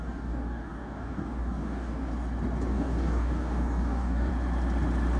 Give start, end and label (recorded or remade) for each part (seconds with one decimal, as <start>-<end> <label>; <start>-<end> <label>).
0.0-2.1 remade; 2.1-2.7 recorded; 2.7-4.3 remade; 4.3-5.2 recorded